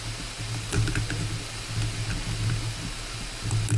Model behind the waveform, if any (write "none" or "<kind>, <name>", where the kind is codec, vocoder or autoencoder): none